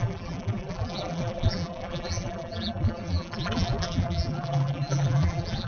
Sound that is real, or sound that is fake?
fake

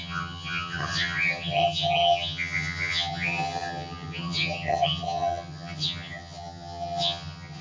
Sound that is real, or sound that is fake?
fake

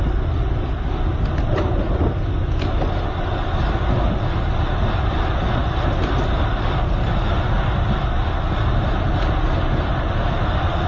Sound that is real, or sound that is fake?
real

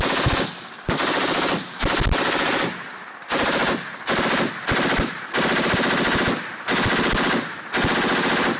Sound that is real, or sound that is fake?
real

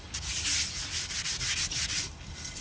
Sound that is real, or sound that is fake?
real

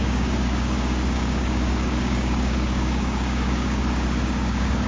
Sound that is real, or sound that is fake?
fake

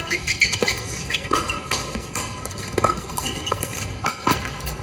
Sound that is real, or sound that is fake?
fake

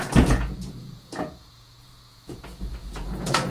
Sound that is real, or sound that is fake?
fake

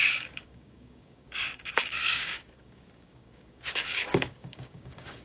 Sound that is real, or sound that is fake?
fake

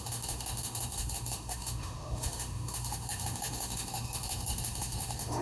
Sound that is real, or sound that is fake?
fake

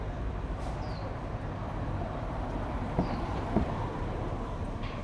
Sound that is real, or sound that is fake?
fake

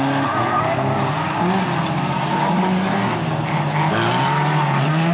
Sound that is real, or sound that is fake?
real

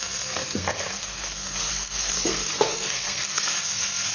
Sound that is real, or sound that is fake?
fake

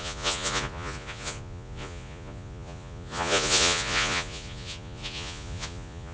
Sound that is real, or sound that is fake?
fake